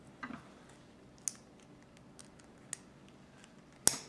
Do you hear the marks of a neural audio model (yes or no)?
no